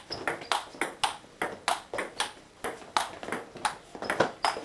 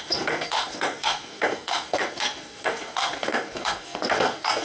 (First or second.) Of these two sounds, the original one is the first